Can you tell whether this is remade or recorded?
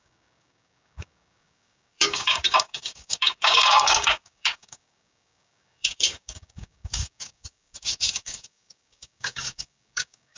remade